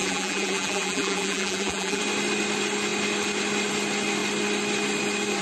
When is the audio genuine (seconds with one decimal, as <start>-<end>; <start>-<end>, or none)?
2.0-5.4